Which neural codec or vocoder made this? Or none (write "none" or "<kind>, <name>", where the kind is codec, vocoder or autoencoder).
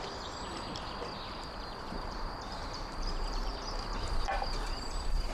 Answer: vocoder, BigVGAN v2